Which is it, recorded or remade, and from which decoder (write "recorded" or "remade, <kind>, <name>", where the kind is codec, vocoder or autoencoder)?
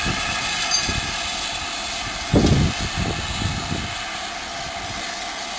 recorded